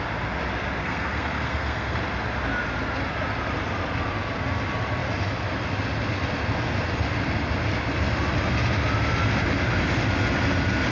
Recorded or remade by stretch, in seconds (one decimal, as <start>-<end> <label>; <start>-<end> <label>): 0.0-0.8 recorded; 0.8-2.0 remade; 2.0-10.9 recorded